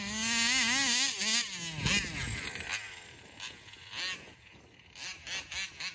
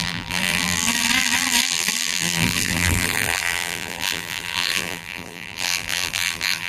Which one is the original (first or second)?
first